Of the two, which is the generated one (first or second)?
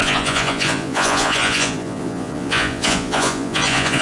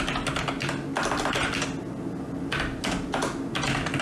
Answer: first